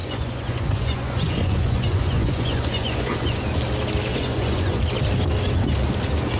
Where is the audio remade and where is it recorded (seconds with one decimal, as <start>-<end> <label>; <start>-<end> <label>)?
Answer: 0.0-3.4 remade; 3.4-4.1 recorded; 4.1-4.8 remade; 4.8-6.4 recorded